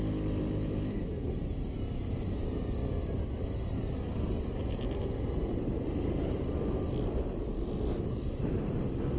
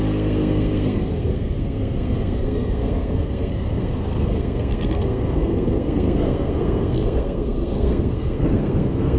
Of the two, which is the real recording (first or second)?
first